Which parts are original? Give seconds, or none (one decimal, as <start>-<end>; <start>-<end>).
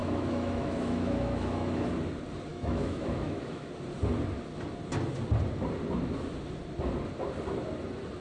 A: 1.9-2.5; 3.7-8.2